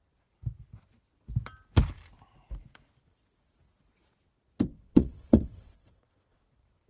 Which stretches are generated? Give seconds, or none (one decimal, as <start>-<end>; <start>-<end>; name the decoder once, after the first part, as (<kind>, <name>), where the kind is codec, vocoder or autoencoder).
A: 4.7-6.4 (vocoder, WaveNeXt)